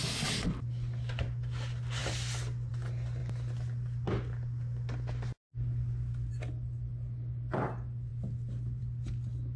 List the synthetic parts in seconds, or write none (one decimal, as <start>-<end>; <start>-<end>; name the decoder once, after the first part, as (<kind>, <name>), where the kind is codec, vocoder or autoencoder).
none

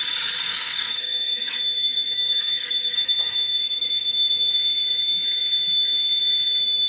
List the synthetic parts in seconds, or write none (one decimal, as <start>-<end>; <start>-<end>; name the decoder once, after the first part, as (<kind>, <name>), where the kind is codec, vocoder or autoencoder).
0.4-4.5 (codec, SNAC)

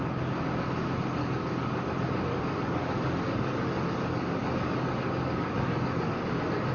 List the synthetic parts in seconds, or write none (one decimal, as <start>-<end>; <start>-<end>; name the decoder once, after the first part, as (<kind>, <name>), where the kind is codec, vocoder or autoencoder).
1.2-1.9 (codec, DAC); 2.3-6.3

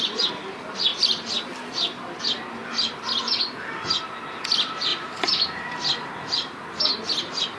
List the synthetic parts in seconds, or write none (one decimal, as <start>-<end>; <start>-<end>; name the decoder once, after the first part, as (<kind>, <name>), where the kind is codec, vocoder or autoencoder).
0.9-2.2 (vocoder, BigVGAN v2); 4.9-6.9